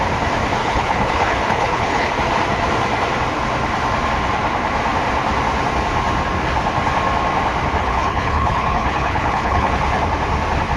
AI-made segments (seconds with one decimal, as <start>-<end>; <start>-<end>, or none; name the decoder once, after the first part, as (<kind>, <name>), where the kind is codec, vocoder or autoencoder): 0.6-2.1 (codec, HILCodec); 7.8-9.7